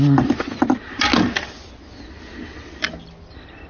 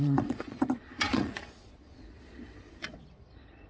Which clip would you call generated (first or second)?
second